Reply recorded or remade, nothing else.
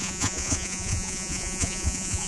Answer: remade